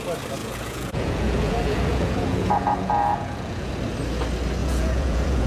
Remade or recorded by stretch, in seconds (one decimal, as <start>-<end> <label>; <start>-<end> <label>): 0.0-0.4 recorded; 0.4-3.7 remade; 3.7-4.6 recorded; 4.6-5.5 remade